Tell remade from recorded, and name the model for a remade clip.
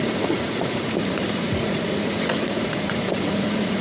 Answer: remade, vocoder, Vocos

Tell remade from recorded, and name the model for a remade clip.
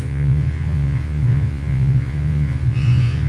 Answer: remade, vocoder, Vocos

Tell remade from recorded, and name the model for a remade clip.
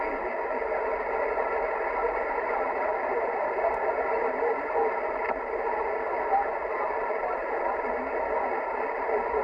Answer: recorded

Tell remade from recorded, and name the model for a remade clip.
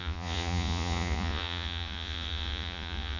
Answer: remade, vocoder, Vocos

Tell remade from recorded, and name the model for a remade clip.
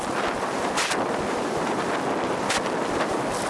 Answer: recorded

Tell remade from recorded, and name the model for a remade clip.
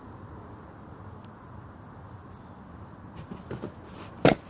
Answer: recorded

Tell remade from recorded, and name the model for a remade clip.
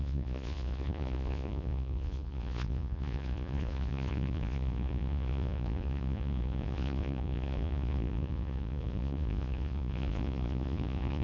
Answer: remade, vocoder, Vocos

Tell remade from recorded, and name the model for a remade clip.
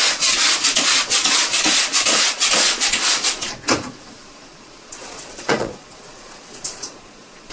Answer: remade, vocoder, Vocos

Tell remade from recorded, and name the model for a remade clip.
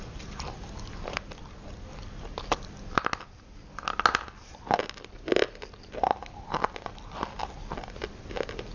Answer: recorded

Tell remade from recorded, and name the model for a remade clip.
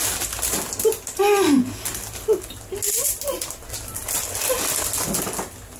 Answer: recorded